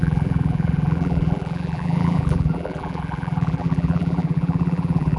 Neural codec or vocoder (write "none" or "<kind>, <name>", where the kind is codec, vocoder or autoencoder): vocoder, BigVGAN v2